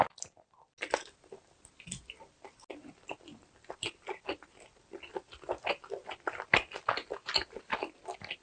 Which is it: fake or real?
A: real